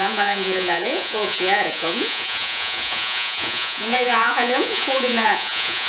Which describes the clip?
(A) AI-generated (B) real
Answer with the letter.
A